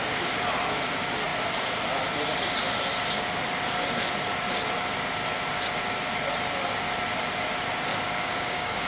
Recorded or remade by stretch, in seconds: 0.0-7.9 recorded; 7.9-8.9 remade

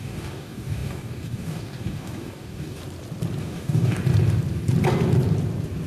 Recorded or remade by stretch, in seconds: 0.0-2.8 remade; 2.8-3.4 recorded; 3.4-4.0 remade; 4.0-5.9 recorded

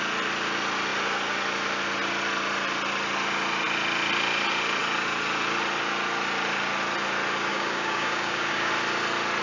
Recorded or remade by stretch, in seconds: 0.0-7.5 recorded; 7.5-8.7 remade; 8.7-9.4 recorded

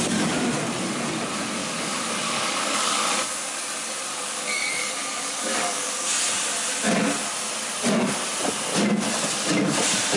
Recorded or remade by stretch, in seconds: 0.0-1.6 recorded; 1.6-3.6 remade; 3.6-4.1 recorded; 4.1-6.1 remade; 6.1-10.2 recorded